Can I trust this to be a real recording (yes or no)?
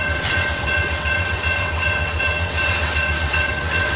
no